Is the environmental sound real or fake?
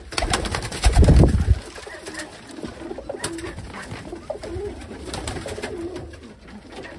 real